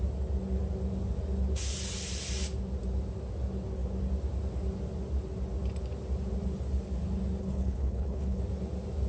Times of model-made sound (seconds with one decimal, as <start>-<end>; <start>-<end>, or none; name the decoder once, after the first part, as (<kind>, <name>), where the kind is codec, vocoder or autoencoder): 7.4-8.4 (codec, HILCodec)